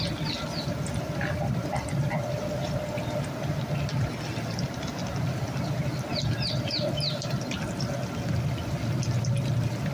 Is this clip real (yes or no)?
yes